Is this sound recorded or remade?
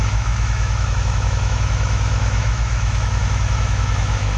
remade